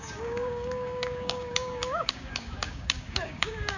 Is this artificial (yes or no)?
yes